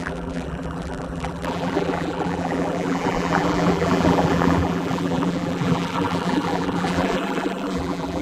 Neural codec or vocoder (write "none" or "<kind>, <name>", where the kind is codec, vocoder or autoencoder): vocoder, BigVGAN v2